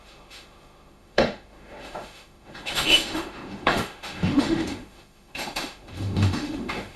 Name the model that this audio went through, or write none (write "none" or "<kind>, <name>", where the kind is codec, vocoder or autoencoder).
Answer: autoencoder, DAC-VAE